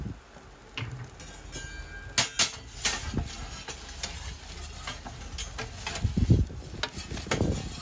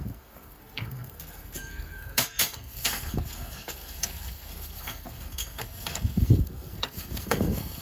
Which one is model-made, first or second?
second